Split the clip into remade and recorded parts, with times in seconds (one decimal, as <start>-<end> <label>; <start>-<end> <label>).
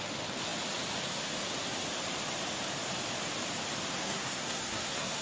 0.0-3.9 recorded; 3.9-5.2 remade